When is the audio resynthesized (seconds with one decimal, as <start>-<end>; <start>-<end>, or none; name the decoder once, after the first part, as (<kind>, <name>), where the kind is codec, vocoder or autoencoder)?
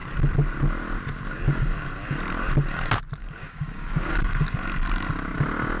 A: 3.2-4.1 (codec, DAC)